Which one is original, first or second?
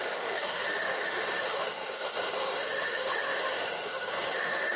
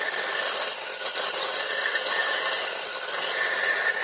second